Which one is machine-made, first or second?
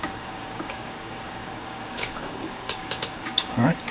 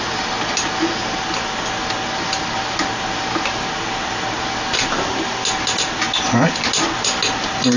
first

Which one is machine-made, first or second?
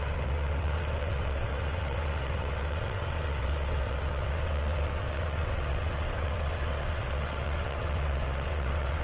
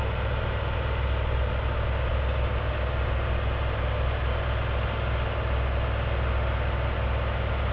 first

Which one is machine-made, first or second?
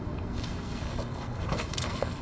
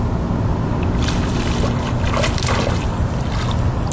first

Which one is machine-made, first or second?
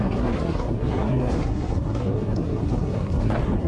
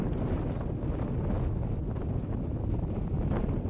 first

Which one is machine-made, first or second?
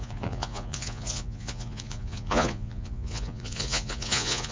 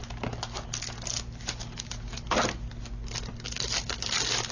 first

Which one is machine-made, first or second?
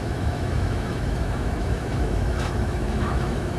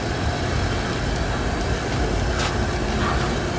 first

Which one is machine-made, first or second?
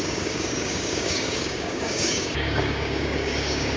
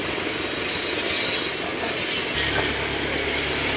first